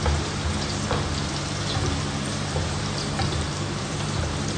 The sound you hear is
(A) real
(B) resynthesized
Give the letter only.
B